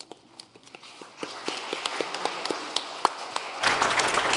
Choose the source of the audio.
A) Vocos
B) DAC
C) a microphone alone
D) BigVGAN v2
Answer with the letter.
A